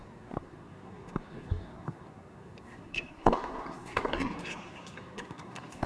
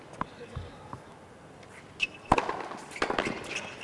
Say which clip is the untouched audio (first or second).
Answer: second